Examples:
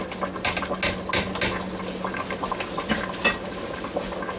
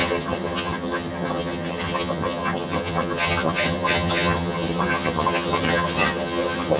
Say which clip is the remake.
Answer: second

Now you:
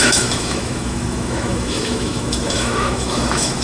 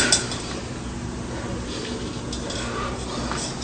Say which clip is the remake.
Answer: first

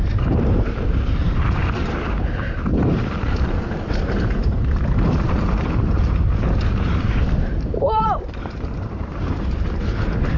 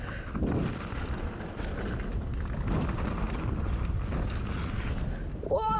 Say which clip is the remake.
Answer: first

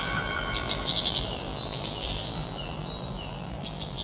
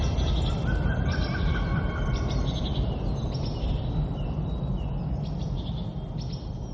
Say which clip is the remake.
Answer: first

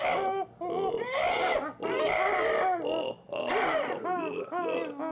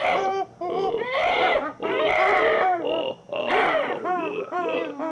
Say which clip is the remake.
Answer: second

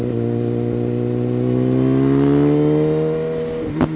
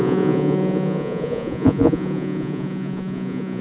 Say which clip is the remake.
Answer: second